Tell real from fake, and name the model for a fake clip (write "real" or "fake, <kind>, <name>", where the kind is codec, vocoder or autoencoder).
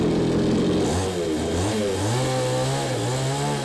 real